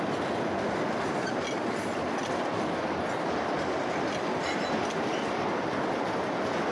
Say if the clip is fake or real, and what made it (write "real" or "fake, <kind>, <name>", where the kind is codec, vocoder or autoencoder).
real